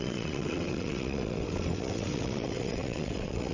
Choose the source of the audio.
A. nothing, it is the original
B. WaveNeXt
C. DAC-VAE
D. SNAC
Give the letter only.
B